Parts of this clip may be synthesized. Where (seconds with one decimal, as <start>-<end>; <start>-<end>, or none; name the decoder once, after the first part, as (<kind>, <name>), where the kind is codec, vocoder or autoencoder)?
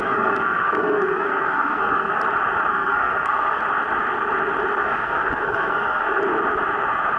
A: 0.0-2.2 (codec, SNAC); 2.7-3.6; 4.8-6.2